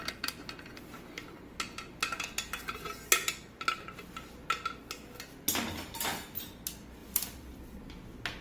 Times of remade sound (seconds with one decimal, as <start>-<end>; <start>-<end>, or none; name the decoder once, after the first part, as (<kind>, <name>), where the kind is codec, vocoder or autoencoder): 7.0-7.6 (vocoder, BigVGAN v2)